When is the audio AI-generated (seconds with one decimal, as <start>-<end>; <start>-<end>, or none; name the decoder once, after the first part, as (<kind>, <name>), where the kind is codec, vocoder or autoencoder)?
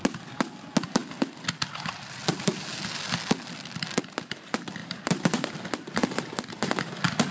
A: 4.8-5.5 (vocoder, BigVGAN v2)